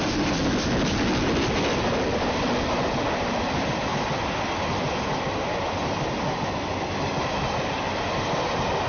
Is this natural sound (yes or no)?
yes